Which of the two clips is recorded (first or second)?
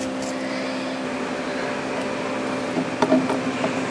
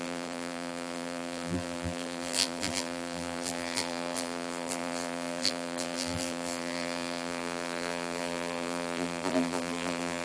first